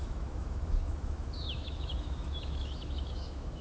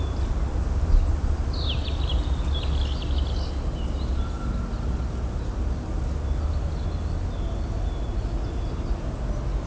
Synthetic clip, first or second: first